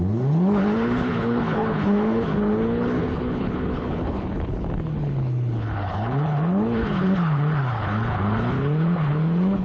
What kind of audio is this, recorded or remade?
remade